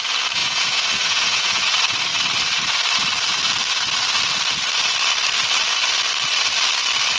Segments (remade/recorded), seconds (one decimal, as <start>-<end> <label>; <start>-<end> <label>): 0.0-0.4 recorded; 0.4-1.6 remade; 1.6-7.2 recorded